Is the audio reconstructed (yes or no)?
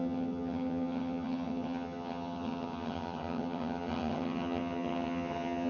yes